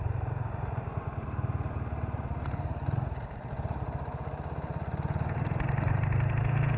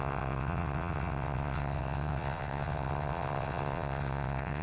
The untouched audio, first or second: first